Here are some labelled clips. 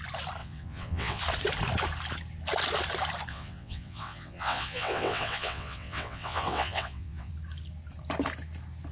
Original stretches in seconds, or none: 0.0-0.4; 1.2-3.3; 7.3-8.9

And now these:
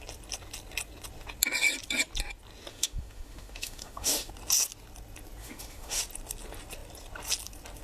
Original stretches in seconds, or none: 0.0-2.7; 4.3-5.4; 6.0-7.8